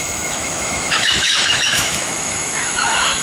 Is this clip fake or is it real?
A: fake